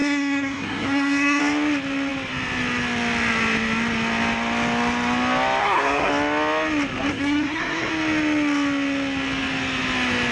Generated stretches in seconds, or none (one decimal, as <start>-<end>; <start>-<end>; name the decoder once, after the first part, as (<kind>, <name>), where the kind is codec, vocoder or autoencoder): 0.0-1.4 (codec, SNAC); 5.6-6.1; 7.1-7.9